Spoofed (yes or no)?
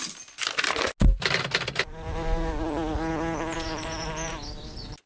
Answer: no